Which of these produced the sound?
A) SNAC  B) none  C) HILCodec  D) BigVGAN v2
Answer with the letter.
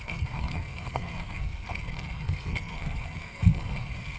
A